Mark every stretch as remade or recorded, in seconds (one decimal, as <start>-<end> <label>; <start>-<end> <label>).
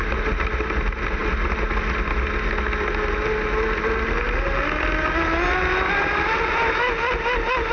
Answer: 0.0-7.7 recorded